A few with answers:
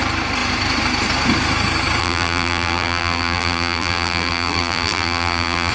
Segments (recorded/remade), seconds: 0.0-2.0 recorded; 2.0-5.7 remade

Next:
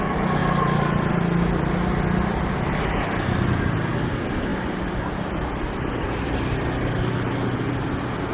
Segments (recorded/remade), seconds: 0.0-0.4 recorded; 0.4-1.1 remade; 1.1-4.5 recorded; 4.5-5.3 remade; 5.3-8.3 recorded

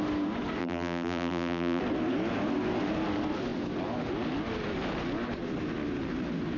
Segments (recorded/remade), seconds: 0.0-0.6 recorded; 0.6-1.8 remade; 1.8-6.6 recorded

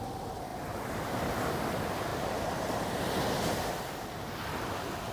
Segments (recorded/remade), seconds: 0.0-0.5 recorded; 0.5-1.5 remade; 1.5-2.1 recorded; 2.1-3.7 remade; 3.7-5.1 recorded

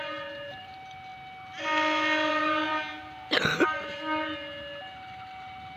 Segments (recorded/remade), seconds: 0.0-1.1 remade; 1.1-2.3 recorded; 2.3-2.7 remade; 2.7-5.8 recorded

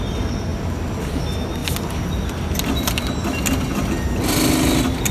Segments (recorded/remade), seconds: 0.0-5.1 recorded

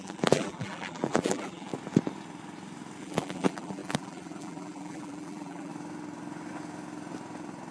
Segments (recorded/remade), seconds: 0.0-1.7 remade; 1.7-3.0 recorded; 3.0-5.7 remade; 5.7-7.7 recorded

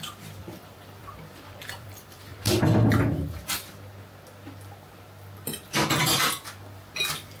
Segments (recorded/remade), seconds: 0.0-2.3 remade; 2.3-6.0 recorded; 6.0-7.4 remade